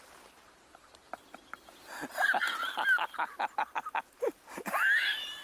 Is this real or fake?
real